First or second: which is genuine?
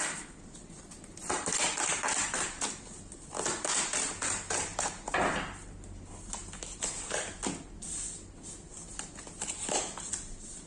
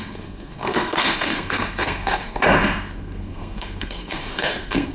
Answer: first